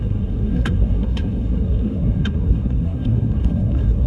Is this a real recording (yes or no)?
no